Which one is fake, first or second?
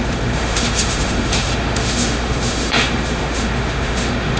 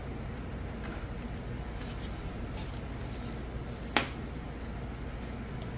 first